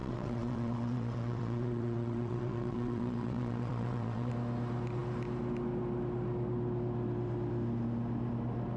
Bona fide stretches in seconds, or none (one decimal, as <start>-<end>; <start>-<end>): 4.3-8.8